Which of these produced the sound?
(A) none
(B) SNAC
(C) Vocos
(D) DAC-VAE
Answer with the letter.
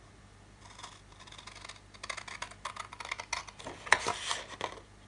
A